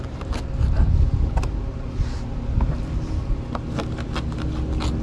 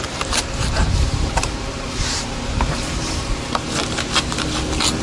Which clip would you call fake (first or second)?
second